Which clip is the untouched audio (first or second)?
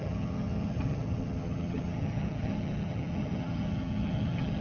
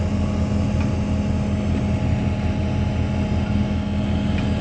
second